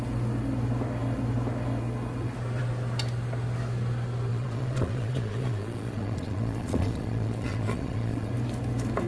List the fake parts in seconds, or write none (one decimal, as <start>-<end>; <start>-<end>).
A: 4.3-8.3